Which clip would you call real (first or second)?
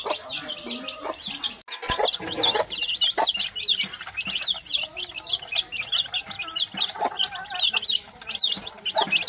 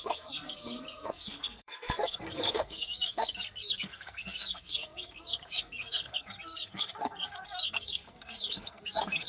first